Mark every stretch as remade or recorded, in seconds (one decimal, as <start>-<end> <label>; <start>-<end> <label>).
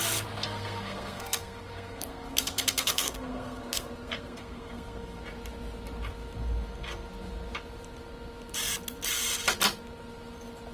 0.0-0.4 recorded; 0.4-5.2 remade; 5.2-10.7 recorded